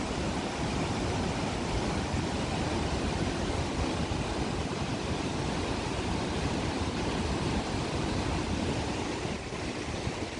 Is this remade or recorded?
recorded